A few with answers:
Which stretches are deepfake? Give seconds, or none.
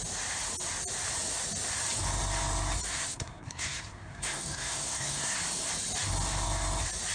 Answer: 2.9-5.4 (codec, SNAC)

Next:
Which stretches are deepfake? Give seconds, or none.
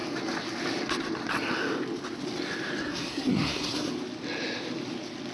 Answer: 2.8-3.9 (codec, SNAC)